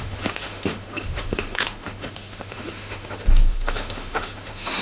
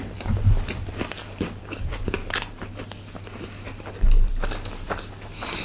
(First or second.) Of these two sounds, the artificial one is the first